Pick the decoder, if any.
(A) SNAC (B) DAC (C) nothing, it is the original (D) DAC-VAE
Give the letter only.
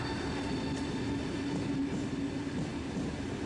C